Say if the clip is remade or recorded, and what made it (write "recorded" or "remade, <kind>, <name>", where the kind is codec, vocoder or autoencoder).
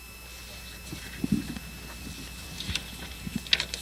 recorded